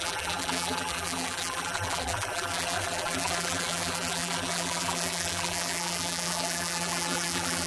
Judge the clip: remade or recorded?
remade